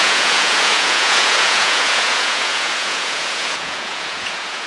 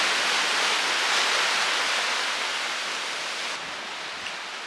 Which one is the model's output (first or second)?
first